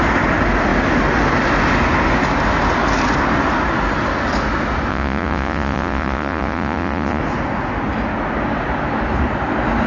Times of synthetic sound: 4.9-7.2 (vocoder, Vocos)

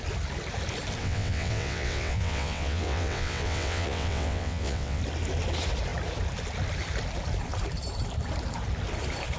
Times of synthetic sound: 1.0-5.0 (vocoder, WaveNeXt)

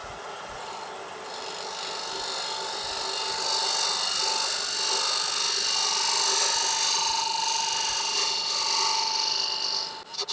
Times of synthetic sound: 0.0-0.7 (vocoder, Vocos)

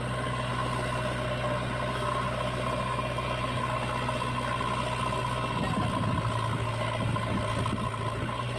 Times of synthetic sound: none